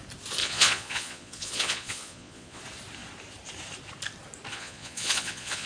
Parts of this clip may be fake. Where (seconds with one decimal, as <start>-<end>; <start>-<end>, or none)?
0.4-2.6; 4.5-5.7